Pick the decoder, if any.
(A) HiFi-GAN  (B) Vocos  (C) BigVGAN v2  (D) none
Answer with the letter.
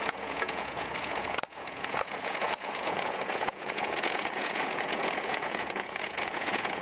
B